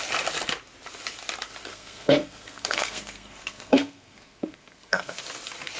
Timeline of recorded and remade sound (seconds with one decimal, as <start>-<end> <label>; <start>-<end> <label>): 0.0-1.7 recorded; 1.7-5.2 remade; 5.2-5.8 recorded